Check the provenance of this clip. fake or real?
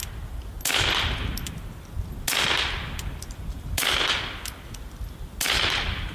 real